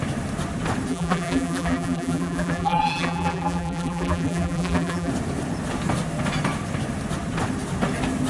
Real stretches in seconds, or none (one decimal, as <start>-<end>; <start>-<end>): 0.0-0.9; 5.1-8.3